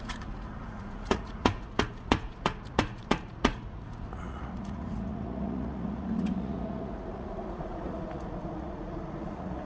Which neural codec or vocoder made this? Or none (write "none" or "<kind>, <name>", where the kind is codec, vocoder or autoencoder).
vocoder, Vocos